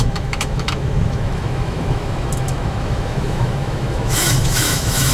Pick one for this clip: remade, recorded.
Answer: remade